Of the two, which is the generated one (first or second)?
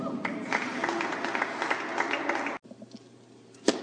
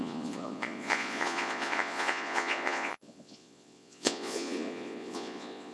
second